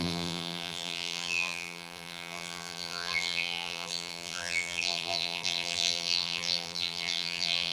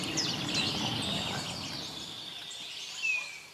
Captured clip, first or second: second